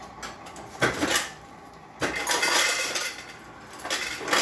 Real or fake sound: real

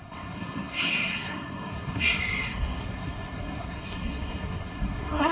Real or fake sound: fake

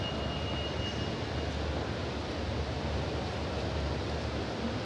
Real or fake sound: real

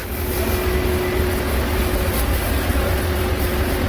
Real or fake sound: real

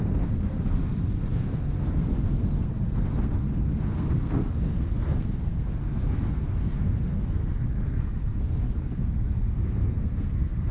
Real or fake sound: fake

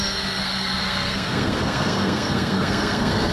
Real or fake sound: fake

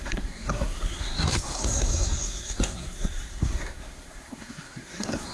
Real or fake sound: fake